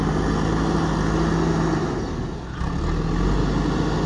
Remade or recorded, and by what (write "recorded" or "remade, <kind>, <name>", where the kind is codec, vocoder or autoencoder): recorded